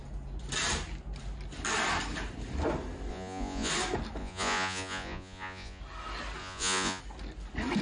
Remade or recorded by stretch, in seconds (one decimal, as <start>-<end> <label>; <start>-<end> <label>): 0.0-3.1 recorded; 3.1-3.7 remade; 3.7-4.2 recorded; 4.2-5.8 remade; 5.8-6.4 recorded; 6.4-7.0 remade; 7.0-7.8 recorded

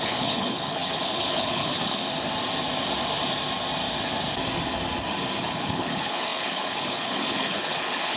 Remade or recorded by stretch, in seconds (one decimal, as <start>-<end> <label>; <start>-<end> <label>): 0.0-2.0 remade; 2.0-5.4 recorded; 5.4-8.2 remade

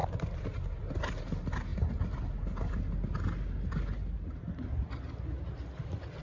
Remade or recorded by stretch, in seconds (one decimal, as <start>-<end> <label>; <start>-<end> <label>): 0.0-6.2 recorded